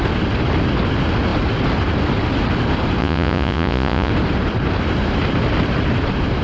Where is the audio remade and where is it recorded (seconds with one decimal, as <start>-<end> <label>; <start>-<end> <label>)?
0.0-3.0 recorded; 3.0-4.1 remade; 4.1-6.4 recorded